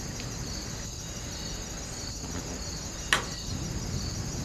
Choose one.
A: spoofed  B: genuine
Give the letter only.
B